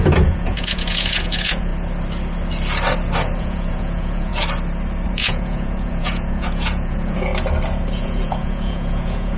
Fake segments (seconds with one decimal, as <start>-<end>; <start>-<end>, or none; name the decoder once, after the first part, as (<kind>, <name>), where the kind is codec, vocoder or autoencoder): 0.0-1.7 (vocoder, Vocos); 3.4-4.3; 5.1-7.3; 7.9-9.4